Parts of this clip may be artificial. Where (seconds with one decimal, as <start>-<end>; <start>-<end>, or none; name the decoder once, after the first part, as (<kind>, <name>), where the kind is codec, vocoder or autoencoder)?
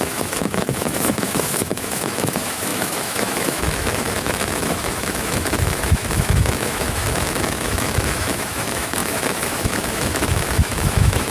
0.0-11.3 (autoencoder, DAC-VAE)